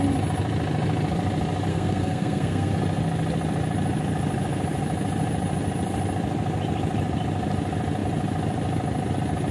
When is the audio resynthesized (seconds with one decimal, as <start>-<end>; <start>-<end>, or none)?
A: 1.7-2.7